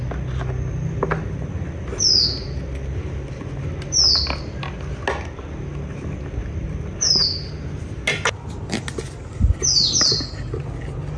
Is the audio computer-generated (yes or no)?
no